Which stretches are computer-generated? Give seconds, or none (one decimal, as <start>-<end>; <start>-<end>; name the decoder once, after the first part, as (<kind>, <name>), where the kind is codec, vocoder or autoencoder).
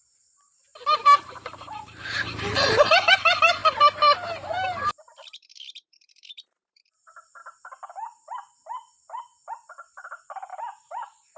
0.0-7.4 (vocoder, BigVGAN v2); 10.5-11.4